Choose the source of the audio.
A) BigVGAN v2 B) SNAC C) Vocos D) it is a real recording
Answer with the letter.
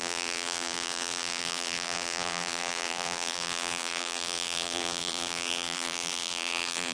A